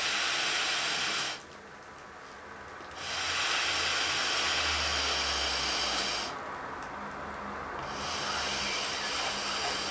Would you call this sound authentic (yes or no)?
yes